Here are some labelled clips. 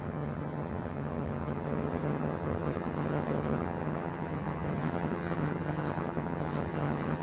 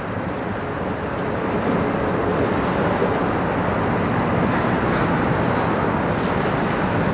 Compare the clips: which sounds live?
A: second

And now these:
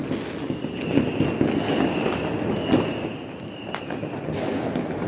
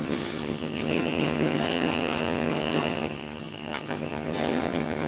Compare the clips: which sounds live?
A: first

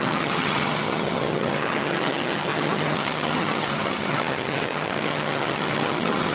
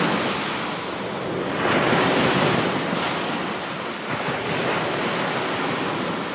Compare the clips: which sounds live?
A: second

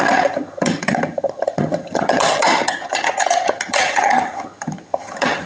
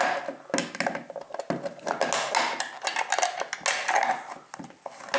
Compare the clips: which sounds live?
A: second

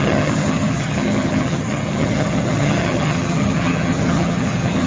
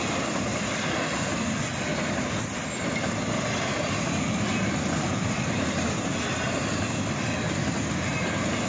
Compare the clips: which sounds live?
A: second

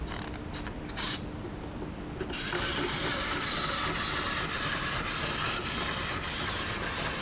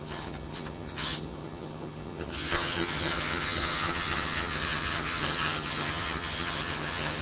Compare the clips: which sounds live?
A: first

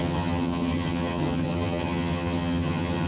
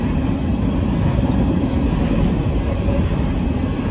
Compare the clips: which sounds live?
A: second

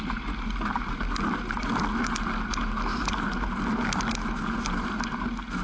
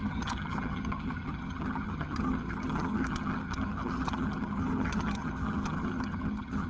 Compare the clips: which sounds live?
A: first